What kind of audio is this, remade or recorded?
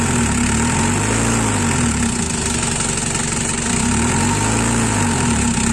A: recorded